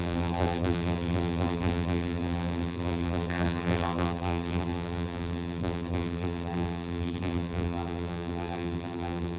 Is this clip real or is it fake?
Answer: fake